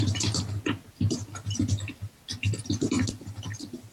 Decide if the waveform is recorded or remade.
recorded